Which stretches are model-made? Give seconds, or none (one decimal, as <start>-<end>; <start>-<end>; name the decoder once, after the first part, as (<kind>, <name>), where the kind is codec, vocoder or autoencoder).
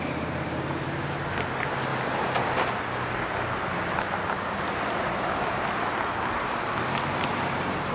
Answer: none